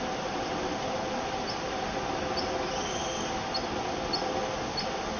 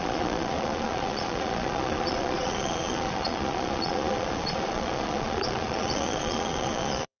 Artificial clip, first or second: second